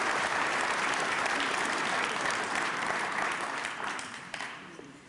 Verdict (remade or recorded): remade